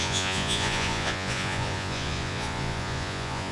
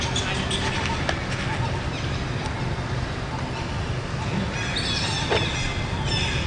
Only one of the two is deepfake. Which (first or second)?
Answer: first